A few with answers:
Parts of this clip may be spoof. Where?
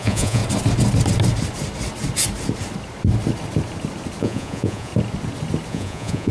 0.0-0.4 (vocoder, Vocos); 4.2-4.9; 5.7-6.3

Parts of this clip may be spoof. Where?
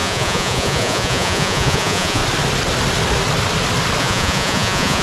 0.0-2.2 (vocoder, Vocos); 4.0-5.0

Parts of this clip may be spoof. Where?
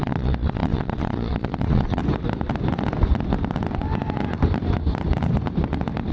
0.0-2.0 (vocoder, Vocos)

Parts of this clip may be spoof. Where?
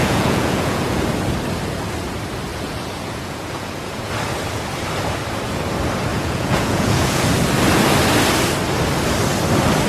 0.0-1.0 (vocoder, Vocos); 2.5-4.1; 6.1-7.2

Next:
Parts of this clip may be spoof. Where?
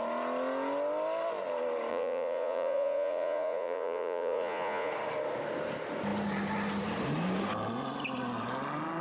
1.9-4.9 (vocoder, Vocos)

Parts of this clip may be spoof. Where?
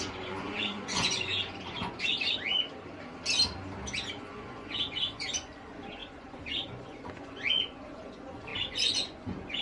0.0-2.1 (vocoder, Vocos); 4.1-9.6